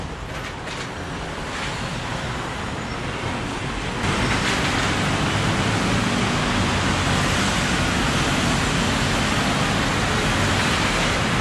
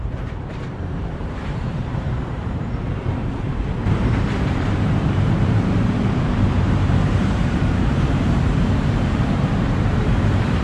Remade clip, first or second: second